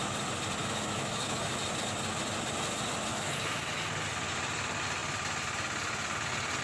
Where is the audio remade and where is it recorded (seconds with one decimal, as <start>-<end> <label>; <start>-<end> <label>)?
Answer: 0.0-0.6 recorded; 0.6-1.5 remade; 1.5-3.1 recorded; 3.1-3.7 remade; 3.7-6.6 recorded